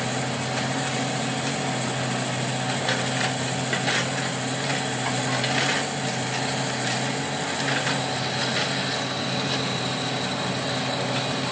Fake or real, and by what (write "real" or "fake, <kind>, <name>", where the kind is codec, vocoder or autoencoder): real